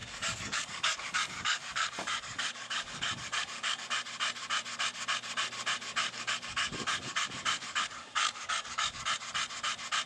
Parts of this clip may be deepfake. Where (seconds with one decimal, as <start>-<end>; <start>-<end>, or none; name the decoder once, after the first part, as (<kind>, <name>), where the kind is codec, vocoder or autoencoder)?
0.0-3.8 (codec, DAC); 6.0-9.0